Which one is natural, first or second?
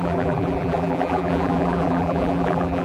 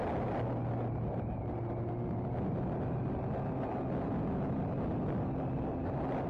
second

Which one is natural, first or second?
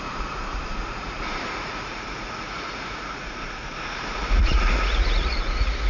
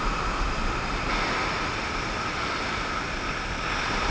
second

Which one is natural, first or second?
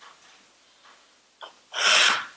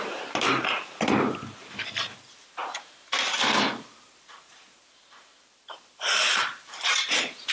first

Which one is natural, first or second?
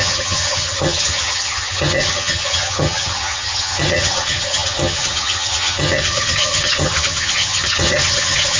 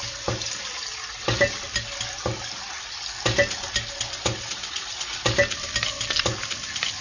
second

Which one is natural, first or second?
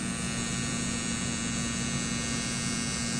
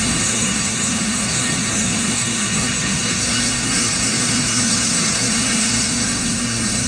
first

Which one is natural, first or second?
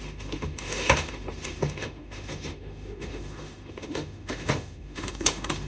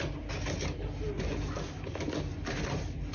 second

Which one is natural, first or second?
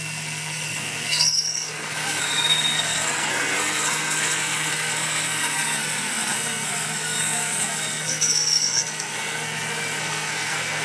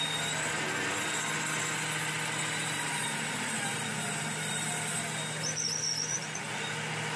second